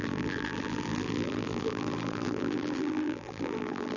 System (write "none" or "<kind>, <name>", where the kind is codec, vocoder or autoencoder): vocoder, BigVGAN v2